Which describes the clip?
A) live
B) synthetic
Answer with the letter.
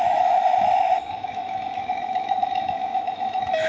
B